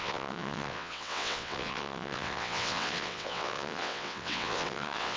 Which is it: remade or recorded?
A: remade